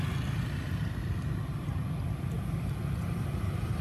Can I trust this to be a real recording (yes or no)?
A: yes